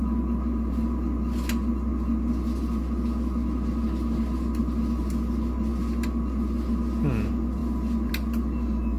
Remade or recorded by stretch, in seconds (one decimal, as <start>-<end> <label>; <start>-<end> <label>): 0.0-9.0 recorded